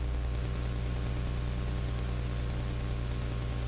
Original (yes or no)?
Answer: yes